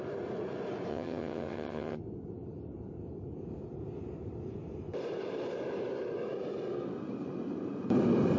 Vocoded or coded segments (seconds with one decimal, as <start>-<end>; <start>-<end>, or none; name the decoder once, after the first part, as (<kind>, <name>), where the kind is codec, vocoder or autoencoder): 0.9-2.0 (vocoder, HiFi-GAN)